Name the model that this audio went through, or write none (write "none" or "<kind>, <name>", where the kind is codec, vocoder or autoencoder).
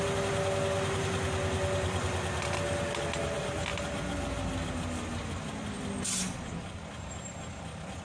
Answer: none